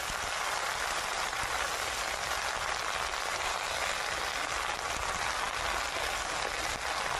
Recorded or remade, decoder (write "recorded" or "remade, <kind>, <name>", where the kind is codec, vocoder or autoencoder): recorded